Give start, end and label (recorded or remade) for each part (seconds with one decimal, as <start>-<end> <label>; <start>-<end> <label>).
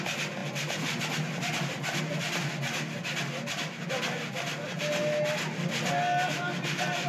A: 0.0-7.1 recorded